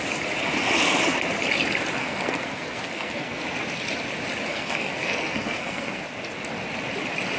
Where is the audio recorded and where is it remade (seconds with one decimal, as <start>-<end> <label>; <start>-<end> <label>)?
0.0-2.0 recorded; 2.0-3.4 remade; 3.4-4.5 recorded; 4.5-6.0 remade; 6.0-7.4 recorded